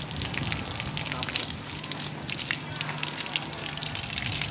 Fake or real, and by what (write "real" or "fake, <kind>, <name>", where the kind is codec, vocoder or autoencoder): real